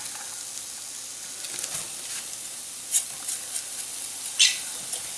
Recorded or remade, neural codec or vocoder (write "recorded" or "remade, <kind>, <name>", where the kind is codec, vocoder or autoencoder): recorded